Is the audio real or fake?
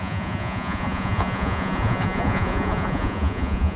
fake